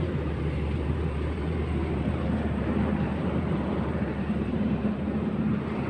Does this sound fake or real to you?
fake